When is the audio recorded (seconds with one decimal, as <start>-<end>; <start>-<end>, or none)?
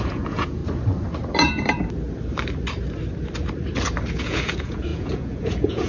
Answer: 0.6-4.1